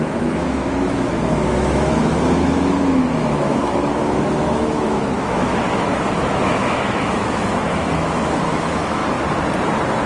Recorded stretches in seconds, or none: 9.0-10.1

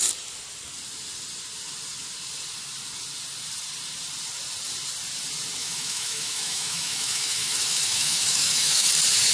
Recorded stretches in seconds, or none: 0.0-5.6; 8.9-9.3

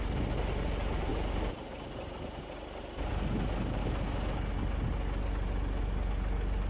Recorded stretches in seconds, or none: 0.0-6.7

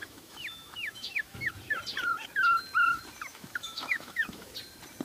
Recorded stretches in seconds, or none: 1.5-3.3; 4.5-5.0